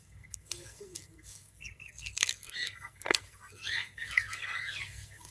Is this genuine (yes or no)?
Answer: no